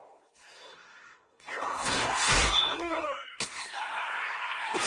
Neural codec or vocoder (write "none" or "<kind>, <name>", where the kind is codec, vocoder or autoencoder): codec, SNAC